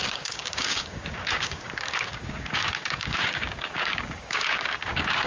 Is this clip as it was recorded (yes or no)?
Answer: no